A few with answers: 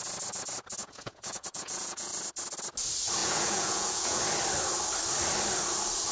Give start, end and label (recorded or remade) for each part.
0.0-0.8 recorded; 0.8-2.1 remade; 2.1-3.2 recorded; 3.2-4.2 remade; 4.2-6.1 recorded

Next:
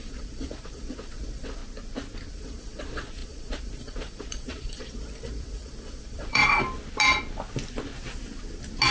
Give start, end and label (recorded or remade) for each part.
0.0-1.6 remade; 1.6-2.3 recorded; 2.3-6.4 remade; 6.4-8.9 recorded

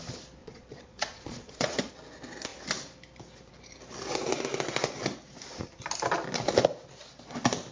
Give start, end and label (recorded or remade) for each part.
0.0-0.4 recorded; 0.4-1.9 remade; 1.9-7.7 recorded

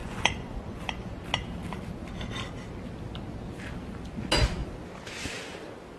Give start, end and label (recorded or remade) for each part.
0.0-1.1 remade; 1.1-6.0 recorded